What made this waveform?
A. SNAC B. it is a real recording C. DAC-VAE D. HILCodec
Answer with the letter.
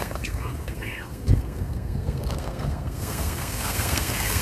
A